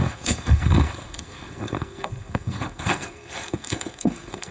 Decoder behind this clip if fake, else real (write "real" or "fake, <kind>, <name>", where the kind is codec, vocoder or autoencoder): fake, codec, SNAC